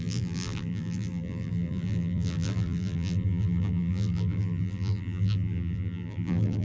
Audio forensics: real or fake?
fake